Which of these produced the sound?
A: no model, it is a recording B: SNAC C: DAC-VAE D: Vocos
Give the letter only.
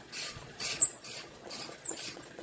D